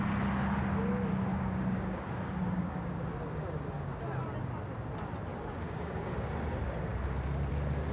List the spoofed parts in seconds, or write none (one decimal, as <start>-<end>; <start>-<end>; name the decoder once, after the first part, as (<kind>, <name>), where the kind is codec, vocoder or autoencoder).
1.3-4.0 (codec, DAC); 5.3-6.1